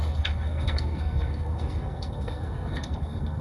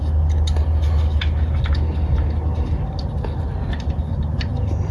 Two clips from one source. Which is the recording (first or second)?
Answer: second